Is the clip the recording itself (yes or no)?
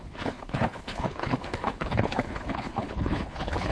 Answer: no